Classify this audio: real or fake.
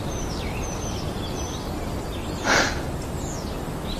real